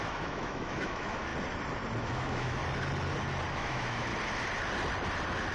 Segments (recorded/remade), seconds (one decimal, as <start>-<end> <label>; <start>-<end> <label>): 0.0-1.3 remade; 1.3-2.0 recorded; 2.0-2.6 remade; 2.6-3.5 recorded; 3.5-4.1 remade; 4.1-5.5 recorded